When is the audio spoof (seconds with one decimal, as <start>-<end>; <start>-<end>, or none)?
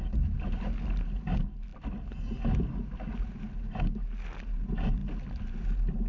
none